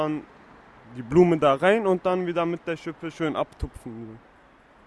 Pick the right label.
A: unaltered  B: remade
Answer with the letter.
A